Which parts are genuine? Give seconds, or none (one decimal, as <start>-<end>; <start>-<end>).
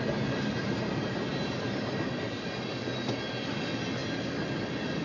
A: 0.0-5.0